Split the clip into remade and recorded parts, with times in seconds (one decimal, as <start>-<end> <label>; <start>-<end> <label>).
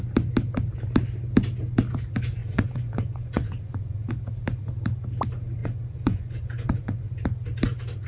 0.0-2.4 recorded; 2.4-4.1 remade; 4.1-5.6 recorded; 5.6-7.1 remade; 7.1-8.1 recorded